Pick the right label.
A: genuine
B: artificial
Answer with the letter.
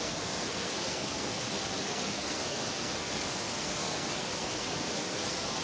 B